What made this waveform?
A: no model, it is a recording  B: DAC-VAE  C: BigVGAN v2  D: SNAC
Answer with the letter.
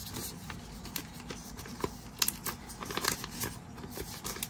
A